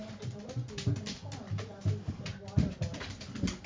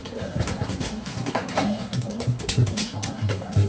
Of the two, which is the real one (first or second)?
first